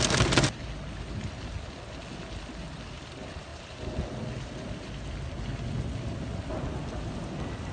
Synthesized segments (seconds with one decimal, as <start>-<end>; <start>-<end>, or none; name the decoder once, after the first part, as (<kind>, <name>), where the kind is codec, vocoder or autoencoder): none